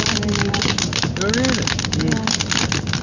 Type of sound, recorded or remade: recorded